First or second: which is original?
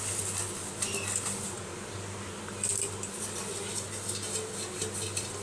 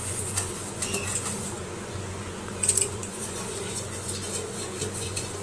first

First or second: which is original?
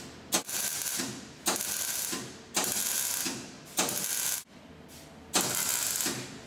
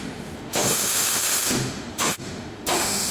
first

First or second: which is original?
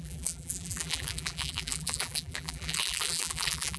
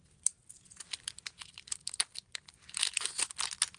second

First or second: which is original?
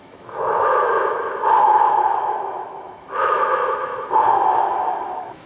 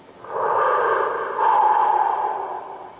second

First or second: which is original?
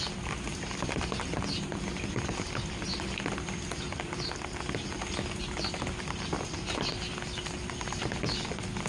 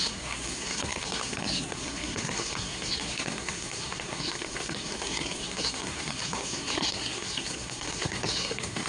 first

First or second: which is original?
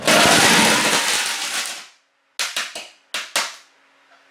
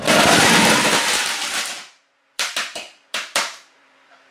first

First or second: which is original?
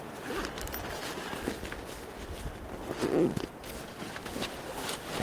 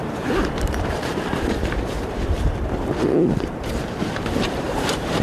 first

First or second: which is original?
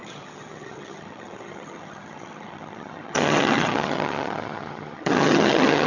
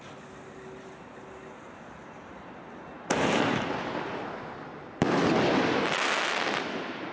second